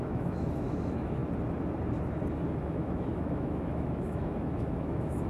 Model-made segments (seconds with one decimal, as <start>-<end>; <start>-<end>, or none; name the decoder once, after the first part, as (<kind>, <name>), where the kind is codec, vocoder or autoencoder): 0.0-1.2 (autoencoder, DAC-VAE); 2.5-5.3